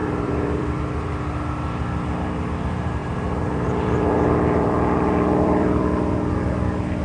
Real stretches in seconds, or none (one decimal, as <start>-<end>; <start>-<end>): 0.8-3.0; 5.9-7.0